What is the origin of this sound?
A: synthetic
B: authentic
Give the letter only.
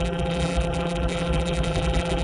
A